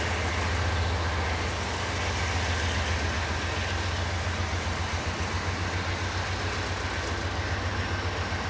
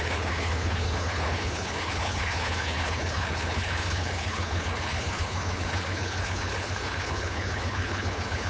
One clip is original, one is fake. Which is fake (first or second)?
second